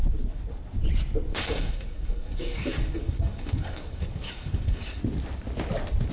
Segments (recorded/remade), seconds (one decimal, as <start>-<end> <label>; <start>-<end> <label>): 0.0-1.3 recorded; 1.3-5.0 remade; 5.0-6.1 recorded